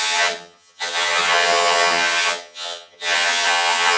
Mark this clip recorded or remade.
remade